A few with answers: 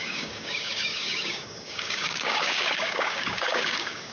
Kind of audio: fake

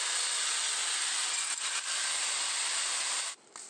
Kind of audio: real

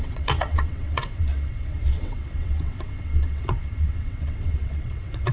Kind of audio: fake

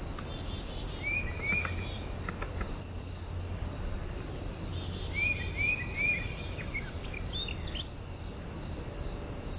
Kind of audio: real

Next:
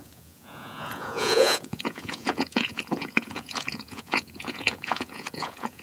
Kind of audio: fake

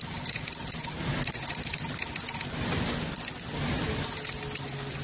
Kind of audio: real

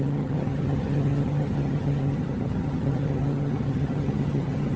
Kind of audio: fake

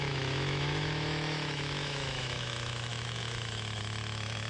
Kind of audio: fake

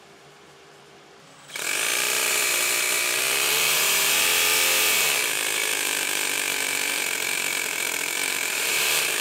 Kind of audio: fake